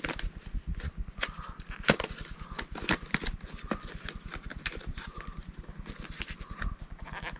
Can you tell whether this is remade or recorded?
recorded